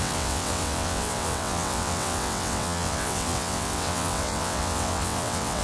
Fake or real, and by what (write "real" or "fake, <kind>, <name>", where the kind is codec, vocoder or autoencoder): fake, vocoder, WaveNeXt